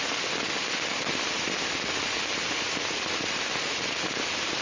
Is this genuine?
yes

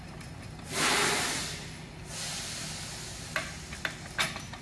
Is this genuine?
yes